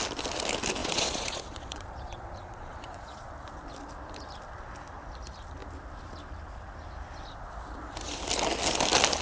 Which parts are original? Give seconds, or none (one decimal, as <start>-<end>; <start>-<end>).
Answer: 0.0-0.8; 3.3-9.2